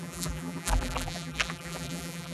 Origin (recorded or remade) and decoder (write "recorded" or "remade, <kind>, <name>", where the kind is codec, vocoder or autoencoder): remade, vocoder, BigVGAN v2